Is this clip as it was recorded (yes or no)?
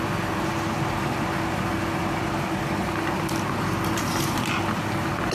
yes